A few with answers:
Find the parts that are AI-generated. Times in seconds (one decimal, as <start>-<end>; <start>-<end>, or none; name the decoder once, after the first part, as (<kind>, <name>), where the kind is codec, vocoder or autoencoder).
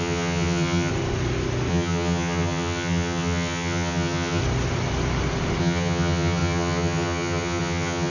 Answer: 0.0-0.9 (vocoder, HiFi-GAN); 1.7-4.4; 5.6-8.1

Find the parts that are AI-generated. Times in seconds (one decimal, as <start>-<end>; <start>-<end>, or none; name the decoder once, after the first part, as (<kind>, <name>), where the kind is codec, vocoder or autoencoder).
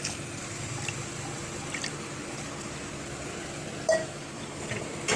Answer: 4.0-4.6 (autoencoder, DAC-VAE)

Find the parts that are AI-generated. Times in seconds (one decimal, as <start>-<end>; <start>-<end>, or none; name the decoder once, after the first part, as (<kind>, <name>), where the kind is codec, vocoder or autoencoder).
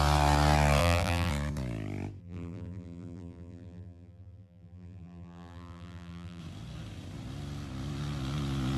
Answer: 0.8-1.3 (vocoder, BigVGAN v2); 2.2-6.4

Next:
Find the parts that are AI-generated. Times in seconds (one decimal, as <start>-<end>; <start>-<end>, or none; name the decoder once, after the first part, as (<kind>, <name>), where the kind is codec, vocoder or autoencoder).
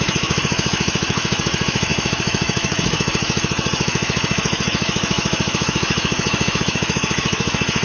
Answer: 0.0-7.8 (autoencoder, DAC-VAE)